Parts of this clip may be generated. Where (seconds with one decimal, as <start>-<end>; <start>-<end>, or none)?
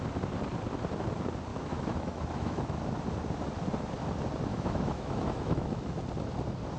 1.5-2.8; 4.5-6.0